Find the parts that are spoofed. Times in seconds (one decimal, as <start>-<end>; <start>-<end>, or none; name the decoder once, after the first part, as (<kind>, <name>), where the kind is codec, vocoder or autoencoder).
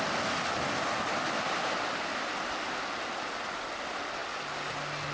none